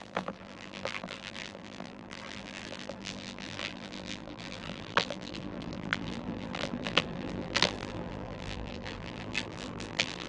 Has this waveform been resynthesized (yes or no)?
yes